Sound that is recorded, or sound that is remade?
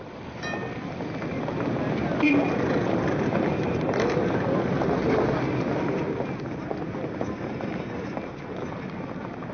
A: recorded